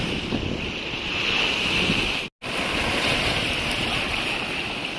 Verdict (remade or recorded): recorded